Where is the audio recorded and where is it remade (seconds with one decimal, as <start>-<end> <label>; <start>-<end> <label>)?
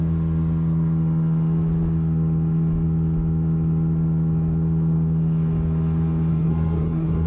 0.0-6.3 recorded; 6.3-7.3 remade